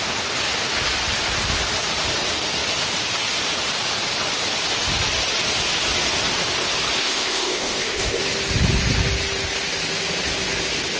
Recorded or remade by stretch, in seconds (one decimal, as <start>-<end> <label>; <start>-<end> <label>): 0.0-7.0 recorded; 7.0-8.2 remade; 8.2-11.0 recorded